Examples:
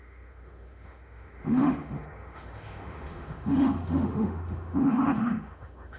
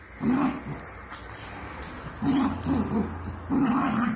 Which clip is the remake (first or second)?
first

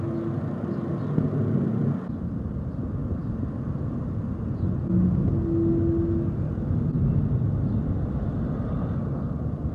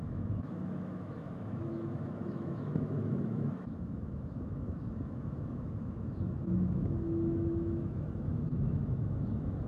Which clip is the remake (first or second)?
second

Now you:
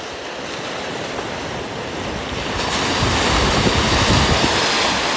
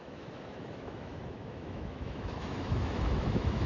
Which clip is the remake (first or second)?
second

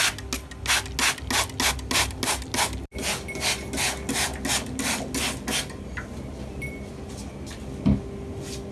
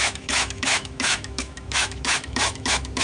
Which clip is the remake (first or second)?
second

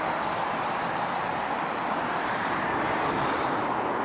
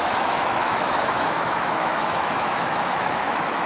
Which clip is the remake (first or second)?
second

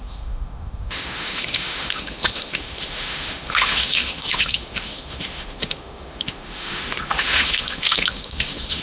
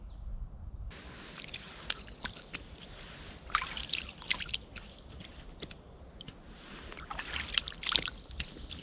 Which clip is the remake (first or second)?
first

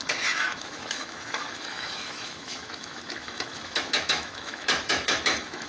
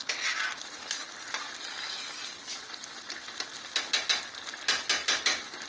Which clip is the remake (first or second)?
first